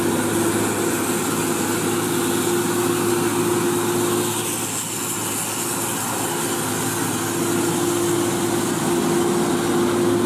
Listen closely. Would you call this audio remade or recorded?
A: recorded